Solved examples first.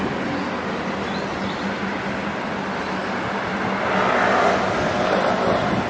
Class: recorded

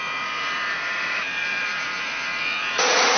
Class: remade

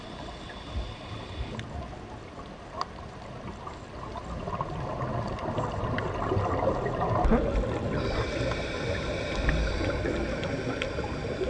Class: recorded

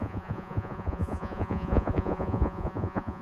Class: remade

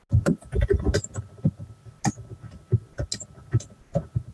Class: recorded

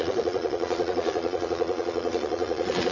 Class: remade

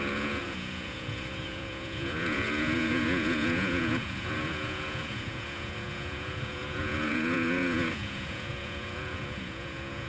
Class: remade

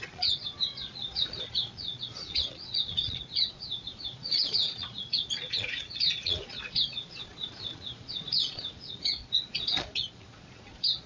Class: remade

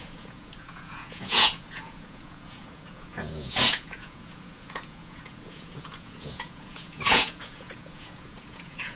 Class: remade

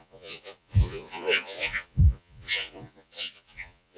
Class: remade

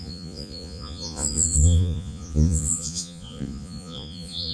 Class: remade